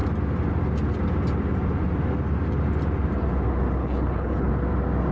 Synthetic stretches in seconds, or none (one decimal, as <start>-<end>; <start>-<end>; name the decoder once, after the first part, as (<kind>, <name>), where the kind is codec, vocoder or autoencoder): 3.8-4.5 (codec, HILCodec)